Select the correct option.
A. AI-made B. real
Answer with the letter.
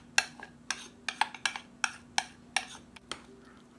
B